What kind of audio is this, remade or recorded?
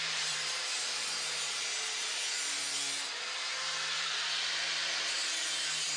remade